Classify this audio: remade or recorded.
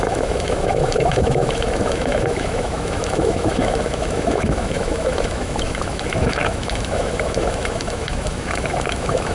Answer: remade